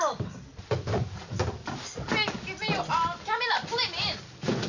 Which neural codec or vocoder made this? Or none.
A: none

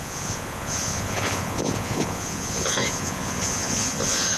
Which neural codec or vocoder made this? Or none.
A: vocoder, Vocos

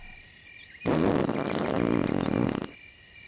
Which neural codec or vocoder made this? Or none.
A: none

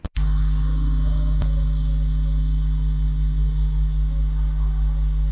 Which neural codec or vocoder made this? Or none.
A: none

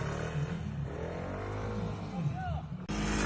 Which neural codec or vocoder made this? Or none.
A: none